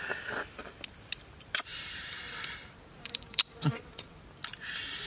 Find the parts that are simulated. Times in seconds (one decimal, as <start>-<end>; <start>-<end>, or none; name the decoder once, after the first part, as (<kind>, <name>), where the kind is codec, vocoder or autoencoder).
1.7-4.3 (vocoder, BigVGAN v2)

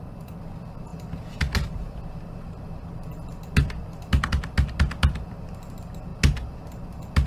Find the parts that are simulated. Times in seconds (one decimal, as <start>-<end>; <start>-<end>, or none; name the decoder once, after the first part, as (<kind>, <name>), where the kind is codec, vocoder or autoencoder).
0.9-2.0 (vocoder, BigVGAN v2)